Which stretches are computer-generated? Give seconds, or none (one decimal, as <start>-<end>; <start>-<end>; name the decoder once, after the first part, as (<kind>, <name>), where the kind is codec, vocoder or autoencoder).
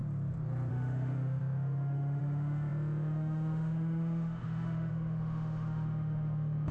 0.7-6.7 (autoencoder, DAC-VAE)